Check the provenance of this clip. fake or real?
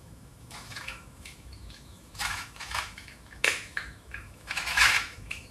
fake